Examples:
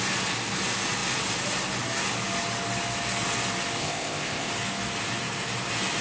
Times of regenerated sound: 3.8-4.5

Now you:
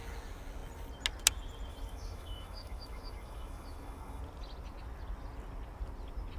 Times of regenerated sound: 1.7-4.2

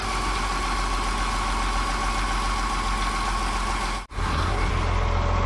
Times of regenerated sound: 4.1-4.7

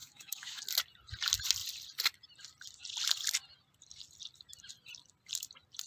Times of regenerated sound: 0.0-0.6

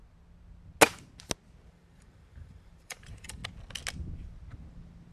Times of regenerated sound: 1.7-3.4

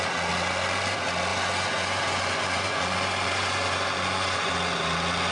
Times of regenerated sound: 1.3-4.5